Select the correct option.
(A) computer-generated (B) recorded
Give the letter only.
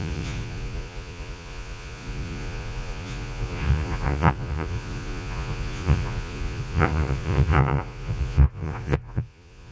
A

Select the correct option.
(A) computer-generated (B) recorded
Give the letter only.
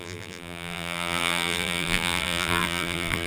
A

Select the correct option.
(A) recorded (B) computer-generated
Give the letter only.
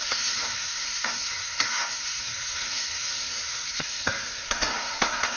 B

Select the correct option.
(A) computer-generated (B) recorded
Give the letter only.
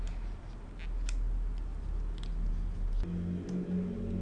B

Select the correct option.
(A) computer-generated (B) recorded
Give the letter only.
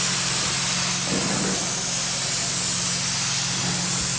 B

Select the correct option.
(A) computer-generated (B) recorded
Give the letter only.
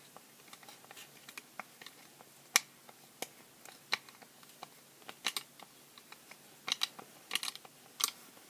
B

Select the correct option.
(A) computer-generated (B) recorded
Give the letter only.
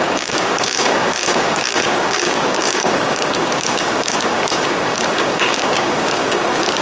A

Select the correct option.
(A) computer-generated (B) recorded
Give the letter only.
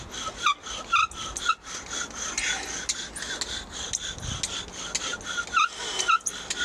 B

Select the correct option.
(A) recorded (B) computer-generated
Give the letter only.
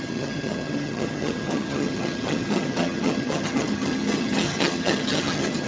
B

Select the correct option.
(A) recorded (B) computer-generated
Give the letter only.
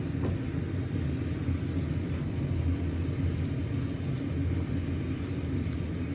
A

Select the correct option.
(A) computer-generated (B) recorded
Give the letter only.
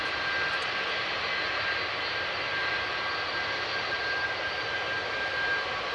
B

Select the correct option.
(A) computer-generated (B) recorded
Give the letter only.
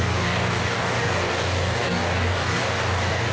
A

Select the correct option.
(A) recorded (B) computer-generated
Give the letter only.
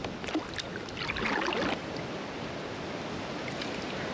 A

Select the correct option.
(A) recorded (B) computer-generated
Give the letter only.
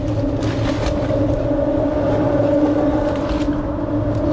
A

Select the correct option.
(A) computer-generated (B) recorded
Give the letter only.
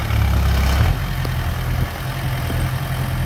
B